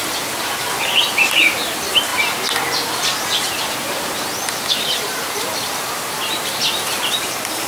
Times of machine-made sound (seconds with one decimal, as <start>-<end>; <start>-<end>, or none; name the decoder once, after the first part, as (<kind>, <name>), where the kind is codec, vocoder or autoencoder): 1.3-2.1 (vocoder, BigVGAN v2); 4.7-7.7